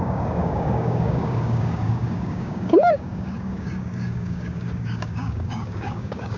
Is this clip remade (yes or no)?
yes